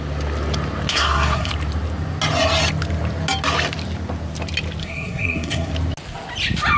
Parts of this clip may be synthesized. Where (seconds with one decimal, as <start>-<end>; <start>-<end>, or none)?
0.9-1.5; 4.8-5.7